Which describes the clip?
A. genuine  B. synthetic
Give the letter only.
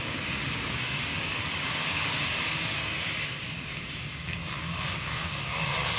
B